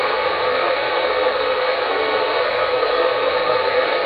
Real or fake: fake